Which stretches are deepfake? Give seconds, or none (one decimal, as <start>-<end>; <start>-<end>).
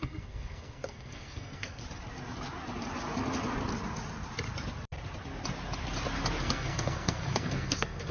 0.0-1.8; 6.4-8.1